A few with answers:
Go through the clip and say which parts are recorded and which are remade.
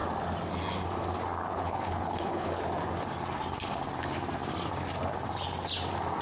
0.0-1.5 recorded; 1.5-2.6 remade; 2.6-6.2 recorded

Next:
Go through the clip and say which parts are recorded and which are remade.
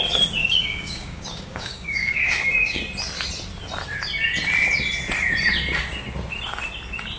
0.0-0.4 recorded; 0.4-2.8 remade; 2.8-7.2 recorded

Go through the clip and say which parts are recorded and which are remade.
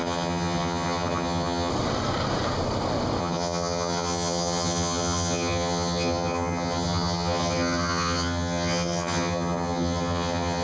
0.0-1.7 remade; 1.7-3.2 recorded; 3.2-10.6 remade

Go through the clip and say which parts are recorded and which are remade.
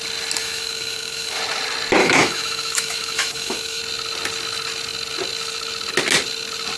0.0-0.4 recorded; 0.4-1.4 remade; 1.4-2.0 recorded; 2.0-3.8 remade; 3.8-6.8 recorded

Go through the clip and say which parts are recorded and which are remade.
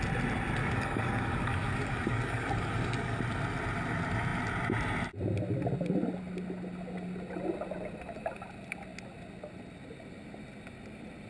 0.0-0.6 recorded; 0.6-3.2 remade; 3.2-11.3 recorded